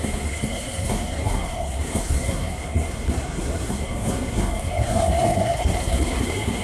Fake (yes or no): yes